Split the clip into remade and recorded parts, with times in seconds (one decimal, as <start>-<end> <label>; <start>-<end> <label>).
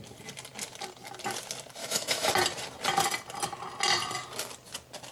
0.0-1.8 recorded; 1.8-2.3 remade; 2.3-5.1 recorded